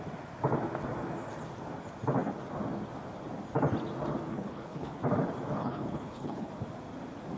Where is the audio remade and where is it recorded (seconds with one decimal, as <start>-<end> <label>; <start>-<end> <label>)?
0.0-4.3 recorded; 4.3-5.0 remade; 5.0-5.6 recorded; 5.6-6.5 remade; 6.5-7.4 recorded